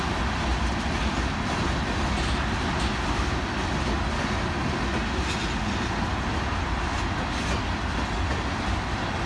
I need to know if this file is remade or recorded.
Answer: recorded